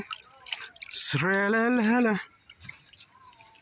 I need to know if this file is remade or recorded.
recorded